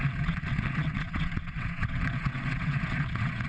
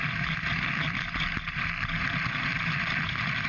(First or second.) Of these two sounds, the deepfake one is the first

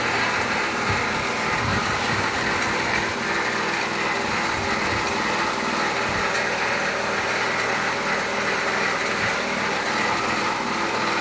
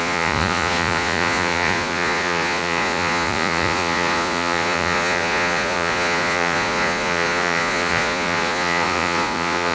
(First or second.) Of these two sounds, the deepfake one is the second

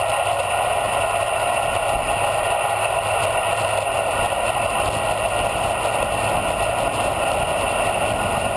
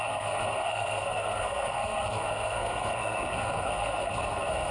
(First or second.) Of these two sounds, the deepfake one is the second